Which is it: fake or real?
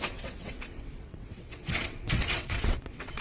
fake